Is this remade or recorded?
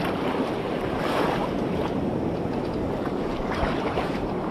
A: remade